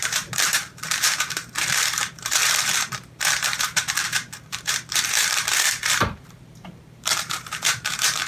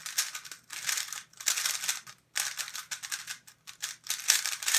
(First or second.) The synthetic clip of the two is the first